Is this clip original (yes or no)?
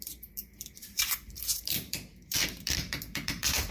no